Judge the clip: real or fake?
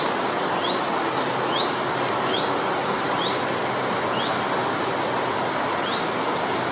real